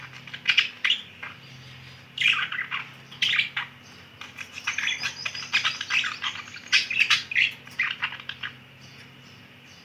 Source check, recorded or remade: remade